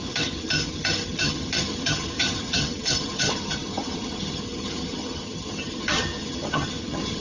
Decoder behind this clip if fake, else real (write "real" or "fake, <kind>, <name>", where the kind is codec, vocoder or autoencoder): fake, vocoder, HiFi-GAN